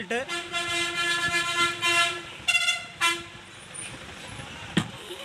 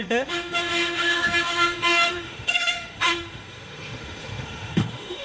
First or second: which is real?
first